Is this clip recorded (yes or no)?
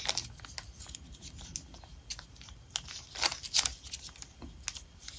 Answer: yes